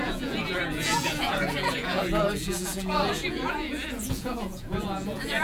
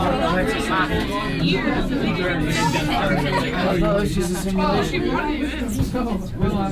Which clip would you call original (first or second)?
second